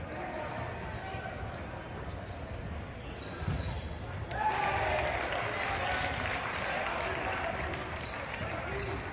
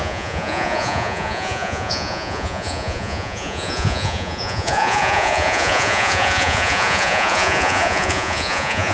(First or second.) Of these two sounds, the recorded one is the first